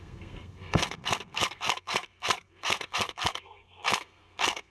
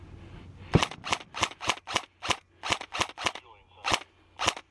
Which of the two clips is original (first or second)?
second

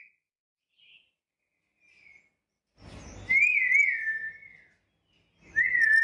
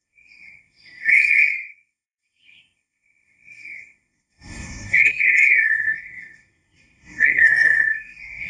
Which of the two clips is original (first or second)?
first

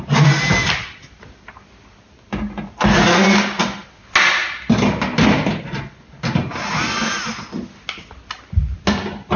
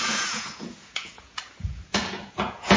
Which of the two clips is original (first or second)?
first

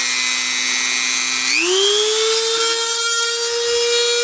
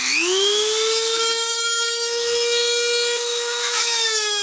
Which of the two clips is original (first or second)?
first